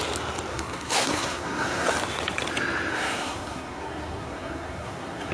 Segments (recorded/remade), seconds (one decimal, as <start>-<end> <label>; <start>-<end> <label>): 0.0-0.5 recorded; 0.5-1.9 remade; 1.9-2.9 recorded; 2.9-5.3 remade